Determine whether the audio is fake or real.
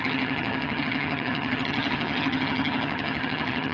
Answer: fake